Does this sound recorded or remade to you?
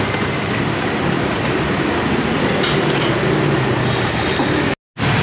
recorded